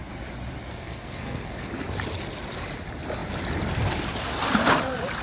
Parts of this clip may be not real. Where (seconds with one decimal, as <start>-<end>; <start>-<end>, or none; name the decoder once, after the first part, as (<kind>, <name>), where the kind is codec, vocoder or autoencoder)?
0.7-1.7 (codec, SNAC)